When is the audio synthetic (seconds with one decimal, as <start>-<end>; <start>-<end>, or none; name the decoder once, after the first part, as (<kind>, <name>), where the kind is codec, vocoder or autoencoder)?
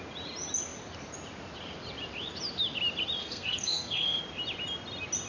3.2-4.2 (codec, SNAC)